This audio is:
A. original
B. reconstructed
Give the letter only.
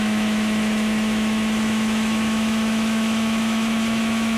B